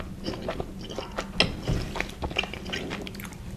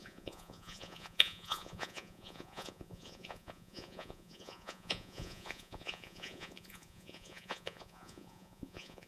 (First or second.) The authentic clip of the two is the first